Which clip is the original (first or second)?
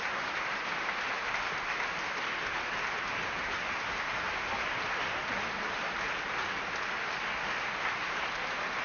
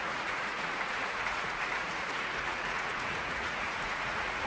first